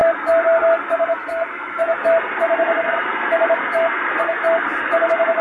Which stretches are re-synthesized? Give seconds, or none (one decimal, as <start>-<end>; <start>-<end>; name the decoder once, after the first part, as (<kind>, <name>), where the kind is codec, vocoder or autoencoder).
none